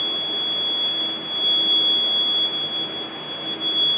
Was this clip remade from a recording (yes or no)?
no